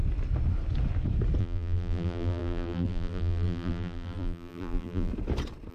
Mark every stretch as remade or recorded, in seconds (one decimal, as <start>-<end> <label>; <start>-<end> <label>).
0.0-1.4 recorded; 1.4-5.1 remade; 5.1-5.7 recorded